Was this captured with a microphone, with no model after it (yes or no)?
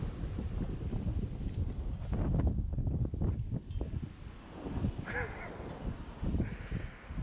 yes